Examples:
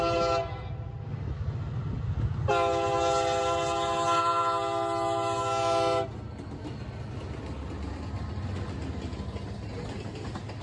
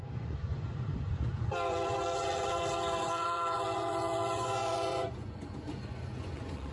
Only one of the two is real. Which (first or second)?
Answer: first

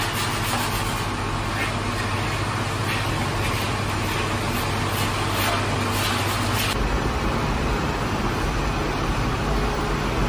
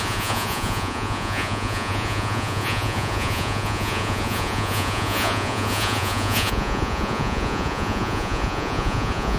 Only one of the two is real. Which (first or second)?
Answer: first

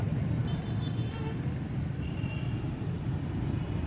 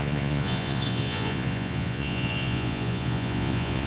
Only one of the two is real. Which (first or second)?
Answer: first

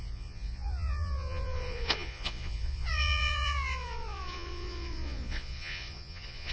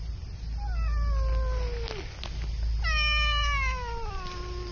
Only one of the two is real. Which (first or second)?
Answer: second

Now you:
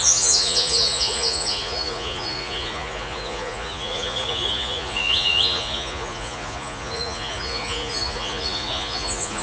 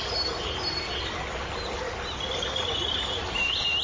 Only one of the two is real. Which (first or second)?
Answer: second